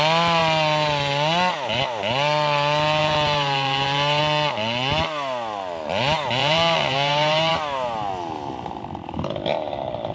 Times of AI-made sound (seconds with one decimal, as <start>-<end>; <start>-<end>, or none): 3.0-4.2; 6.4-7.5